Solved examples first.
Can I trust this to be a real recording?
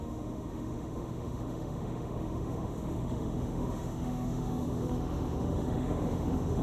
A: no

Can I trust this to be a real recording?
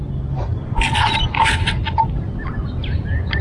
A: yes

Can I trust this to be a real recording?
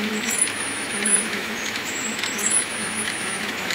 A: no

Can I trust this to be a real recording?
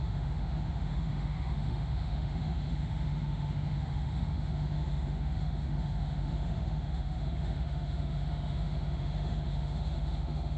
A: no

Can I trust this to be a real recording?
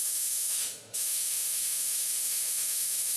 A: no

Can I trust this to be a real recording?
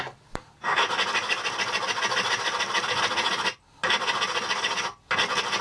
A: yes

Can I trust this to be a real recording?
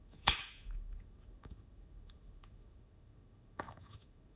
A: no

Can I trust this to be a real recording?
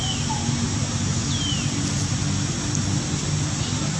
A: yes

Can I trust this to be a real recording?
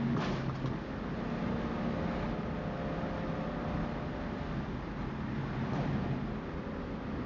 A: yes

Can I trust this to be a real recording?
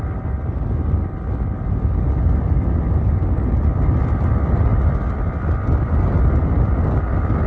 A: yes